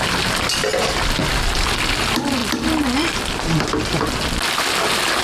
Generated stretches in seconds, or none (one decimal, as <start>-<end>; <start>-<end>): none